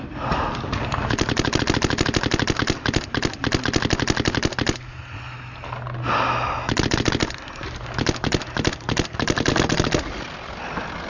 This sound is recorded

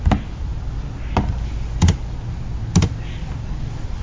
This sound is recorded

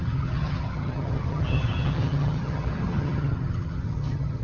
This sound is remade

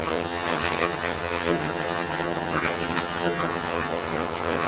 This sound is remade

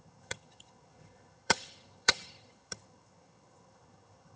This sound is remade